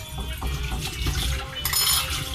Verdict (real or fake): real